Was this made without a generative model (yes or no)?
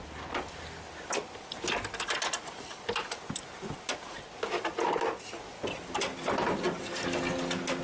yes